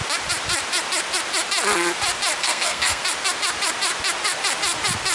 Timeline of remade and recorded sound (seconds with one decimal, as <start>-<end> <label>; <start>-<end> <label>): 0.0-2.4 recorded; 2.4-3.0 remade; 3.0-5.1 recorded